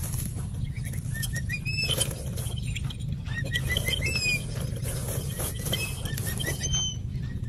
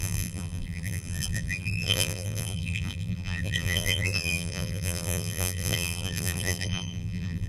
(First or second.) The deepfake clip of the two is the second